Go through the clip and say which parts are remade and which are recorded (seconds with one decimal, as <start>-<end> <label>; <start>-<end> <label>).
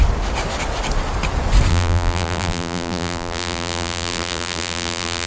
0.0-1.7 recorded; 1.7-5.3 remade